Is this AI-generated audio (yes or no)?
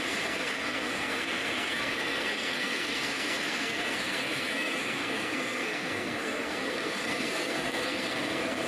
yes